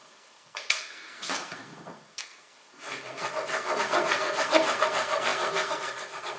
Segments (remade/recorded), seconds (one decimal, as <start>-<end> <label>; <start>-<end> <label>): 0.0-6.4 remade